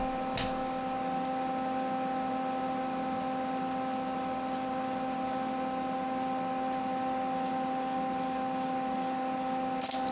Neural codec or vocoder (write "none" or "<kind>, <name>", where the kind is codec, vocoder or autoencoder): none